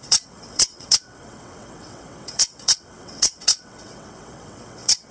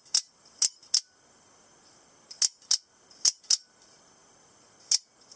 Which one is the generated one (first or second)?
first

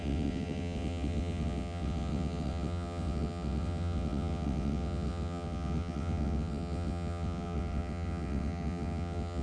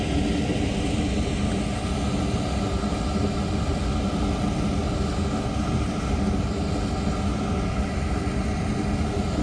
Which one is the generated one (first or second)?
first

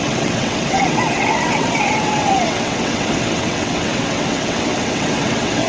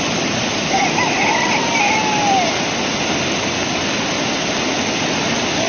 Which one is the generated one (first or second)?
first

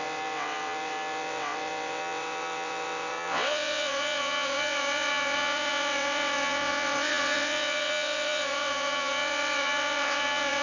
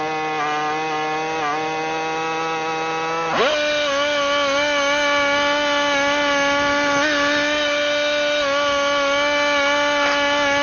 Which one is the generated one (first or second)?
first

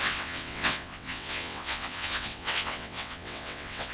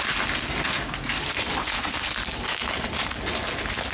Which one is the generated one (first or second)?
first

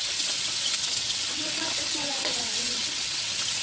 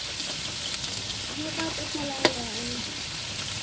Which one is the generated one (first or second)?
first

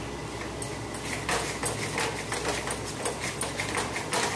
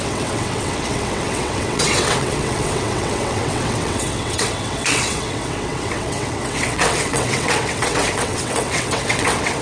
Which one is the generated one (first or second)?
second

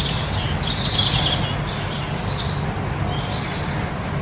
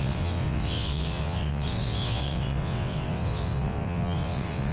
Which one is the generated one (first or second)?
second